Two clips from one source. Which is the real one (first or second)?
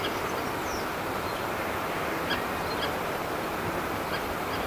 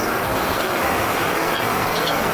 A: first